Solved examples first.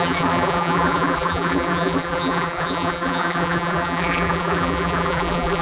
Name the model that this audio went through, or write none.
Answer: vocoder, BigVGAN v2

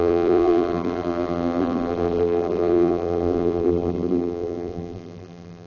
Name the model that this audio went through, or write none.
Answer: vocoder, BigVGAN v2